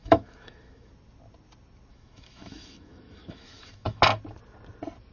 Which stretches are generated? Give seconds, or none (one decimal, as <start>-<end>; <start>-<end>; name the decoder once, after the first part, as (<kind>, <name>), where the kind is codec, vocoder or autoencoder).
0.0-0.9 (autoencoder, DAC-VAE); 1.9-4.0